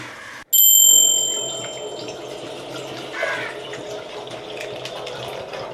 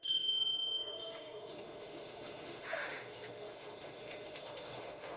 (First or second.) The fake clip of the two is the second